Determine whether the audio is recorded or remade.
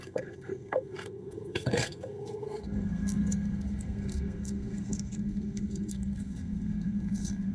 remade